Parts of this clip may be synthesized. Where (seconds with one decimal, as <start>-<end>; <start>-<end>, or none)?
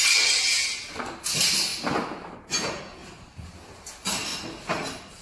3.0-3.6